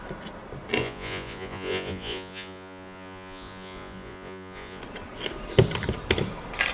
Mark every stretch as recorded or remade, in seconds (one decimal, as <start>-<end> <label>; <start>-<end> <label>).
0.0-0.8 recorded; 0.8-4.8 remade; 4.8-6.7 recorded